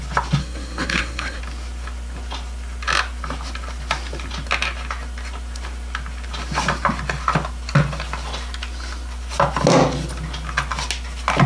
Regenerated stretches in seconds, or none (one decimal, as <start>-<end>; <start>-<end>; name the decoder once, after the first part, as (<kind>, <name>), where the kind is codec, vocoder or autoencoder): 0.4-1.4 (codec, SNAC)